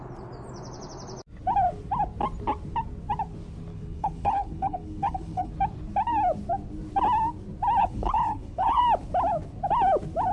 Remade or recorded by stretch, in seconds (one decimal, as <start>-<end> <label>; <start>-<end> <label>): 0.0-3.7 recorded; 3.7-5.5 remade; 5.5-7.8 recorded; 7.8-8.8 remade; 8.8-10.3 recorded